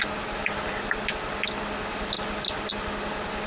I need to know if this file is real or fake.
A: real